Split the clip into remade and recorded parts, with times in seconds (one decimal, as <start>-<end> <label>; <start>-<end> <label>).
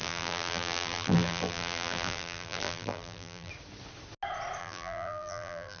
0.0-3.5 remade; 3.5-4.6 recorded; 4.6-5.8 remade